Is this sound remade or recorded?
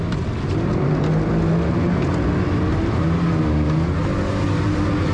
recorded